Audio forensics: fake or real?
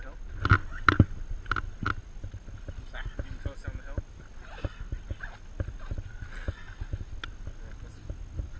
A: real